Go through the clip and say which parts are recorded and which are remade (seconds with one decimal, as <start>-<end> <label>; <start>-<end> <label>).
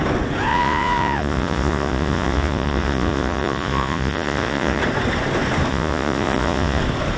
0.0-0.5 recorded; 0.5-4.8 remade; 4.8-5.7 recorded; 5.7-6.8 remade; 6.8-7.2 recorded